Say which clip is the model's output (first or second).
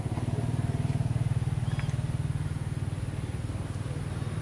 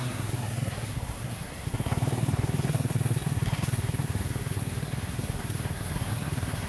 second